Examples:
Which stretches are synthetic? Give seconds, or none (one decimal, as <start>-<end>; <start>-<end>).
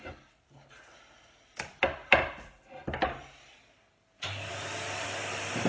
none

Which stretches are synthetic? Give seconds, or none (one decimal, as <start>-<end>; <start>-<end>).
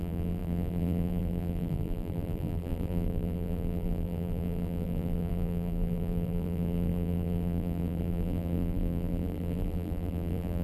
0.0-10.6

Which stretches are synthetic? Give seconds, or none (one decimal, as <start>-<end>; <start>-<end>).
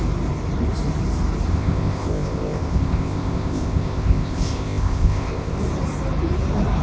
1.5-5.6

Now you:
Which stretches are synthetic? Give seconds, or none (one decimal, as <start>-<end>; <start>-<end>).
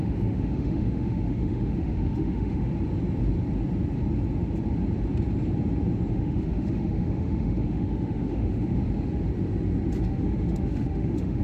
0.0-2.7; 6.1-8.8; 10.0-11.4